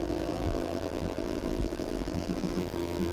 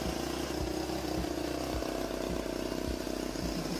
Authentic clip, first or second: second